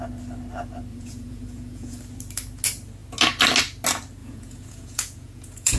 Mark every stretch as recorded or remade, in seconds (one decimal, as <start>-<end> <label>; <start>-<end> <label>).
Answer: 0.0-0.9 recorded; 0.9-2.0 remade; 2.0-4.2 recorded; 4.2-5.8 remade